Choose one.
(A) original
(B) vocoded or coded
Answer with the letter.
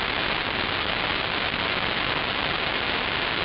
A